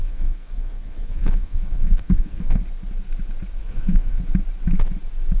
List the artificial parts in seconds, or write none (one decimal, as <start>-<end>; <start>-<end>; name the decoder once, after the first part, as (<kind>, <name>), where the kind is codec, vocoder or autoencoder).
0.0-2.6 (codec, SNAC); 3.6-4.2